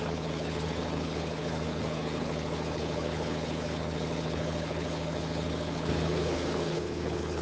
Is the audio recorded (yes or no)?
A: no